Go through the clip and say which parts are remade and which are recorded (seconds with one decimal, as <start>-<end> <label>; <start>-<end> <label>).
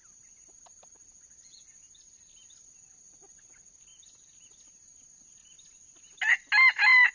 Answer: 0.0-7.1 recorded